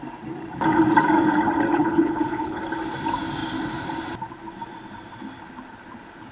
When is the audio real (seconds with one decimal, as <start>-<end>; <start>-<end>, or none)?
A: 0.0-1.7; 2.6-6.3